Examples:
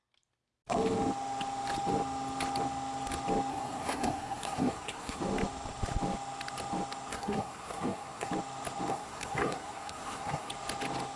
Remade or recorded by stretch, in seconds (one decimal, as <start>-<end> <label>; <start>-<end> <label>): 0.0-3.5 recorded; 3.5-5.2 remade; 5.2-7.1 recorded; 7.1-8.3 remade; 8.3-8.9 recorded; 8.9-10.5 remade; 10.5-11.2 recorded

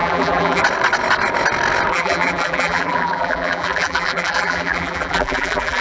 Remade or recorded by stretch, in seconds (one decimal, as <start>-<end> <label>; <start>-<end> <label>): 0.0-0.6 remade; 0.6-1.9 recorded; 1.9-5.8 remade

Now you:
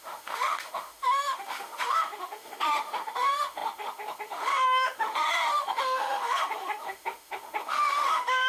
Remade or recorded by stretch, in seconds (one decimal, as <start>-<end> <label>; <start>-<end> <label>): 0.0-8.5 remade